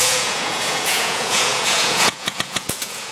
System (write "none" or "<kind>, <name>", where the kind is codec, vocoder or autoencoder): vocoder, Vocos